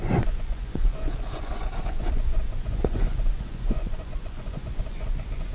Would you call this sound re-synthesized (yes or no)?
yes